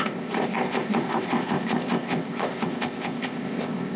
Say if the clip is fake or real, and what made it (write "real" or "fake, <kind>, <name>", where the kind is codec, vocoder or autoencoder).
fake, codec, ZipCodec